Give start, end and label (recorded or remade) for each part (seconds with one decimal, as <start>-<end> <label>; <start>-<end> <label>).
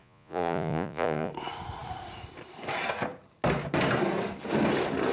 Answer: 0.0-1.3 remade; 1.3-5.1 recorded